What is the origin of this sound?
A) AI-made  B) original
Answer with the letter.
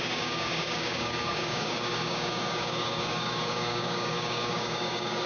A